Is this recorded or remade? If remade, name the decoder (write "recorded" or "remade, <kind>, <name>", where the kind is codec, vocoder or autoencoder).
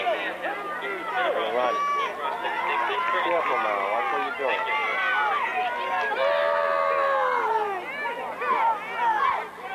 recorded